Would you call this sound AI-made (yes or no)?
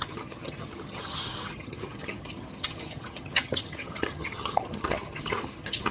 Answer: yes